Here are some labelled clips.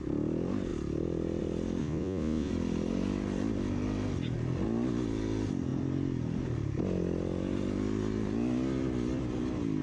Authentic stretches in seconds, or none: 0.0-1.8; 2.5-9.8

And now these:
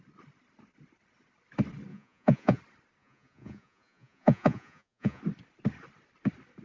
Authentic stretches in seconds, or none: 0.0-1.9; 2.6-3.0; 5.2-6.6

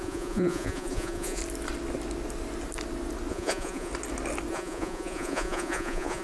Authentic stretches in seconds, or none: 1.4-3.3; 3.9-4.5

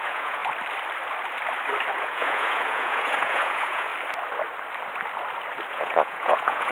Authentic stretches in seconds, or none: 0.4-2.0; 3.9-5.7

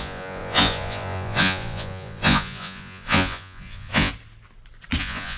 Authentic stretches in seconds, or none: 4.1-5.0